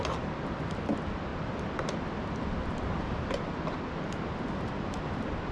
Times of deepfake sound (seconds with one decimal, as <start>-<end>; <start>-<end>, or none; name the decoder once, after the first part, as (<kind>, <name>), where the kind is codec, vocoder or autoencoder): none